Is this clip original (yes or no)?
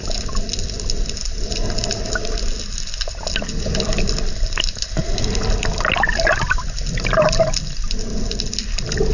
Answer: yes